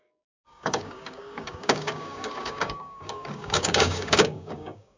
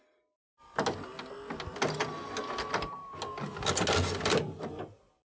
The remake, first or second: first